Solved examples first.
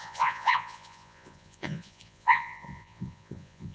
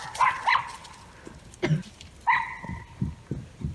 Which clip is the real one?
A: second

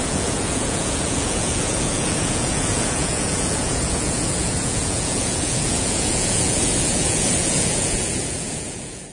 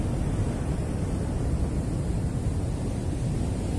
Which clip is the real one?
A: second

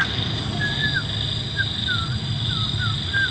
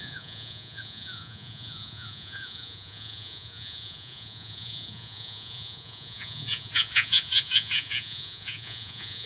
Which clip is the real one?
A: first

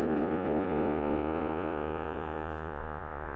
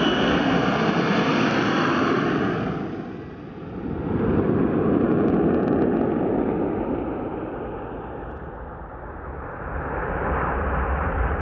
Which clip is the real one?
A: second